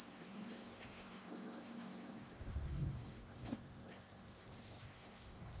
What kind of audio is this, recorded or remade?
remade